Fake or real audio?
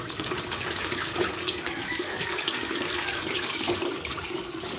fake